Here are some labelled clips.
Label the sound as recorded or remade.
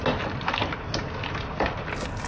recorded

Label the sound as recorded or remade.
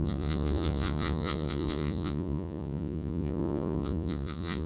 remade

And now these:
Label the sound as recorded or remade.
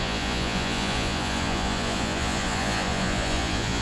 remade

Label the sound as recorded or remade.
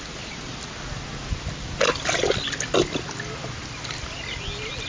recorded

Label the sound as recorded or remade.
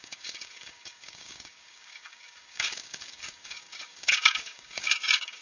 remade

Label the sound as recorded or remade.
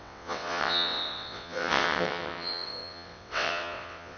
remade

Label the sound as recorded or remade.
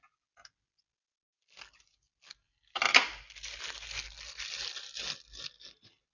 recorded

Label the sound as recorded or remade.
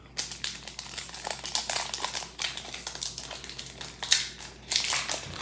recorded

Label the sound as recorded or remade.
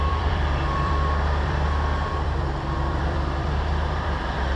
remade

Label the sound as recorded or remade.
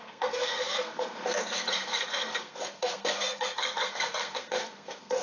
remade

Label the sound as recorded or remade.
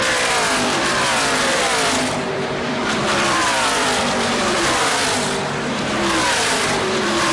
remade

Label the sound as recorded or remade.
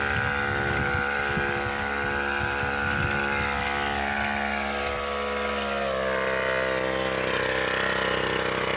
recorded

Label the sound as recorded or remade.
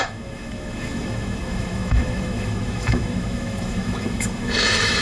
remade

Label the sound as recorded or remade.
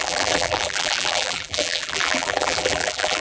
remade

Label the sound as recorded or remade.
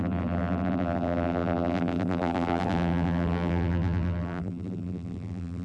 remade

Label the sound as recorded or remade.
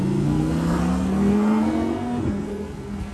remade